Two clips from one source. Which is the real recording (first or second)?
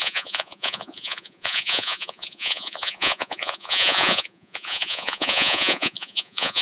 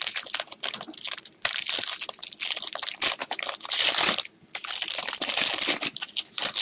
second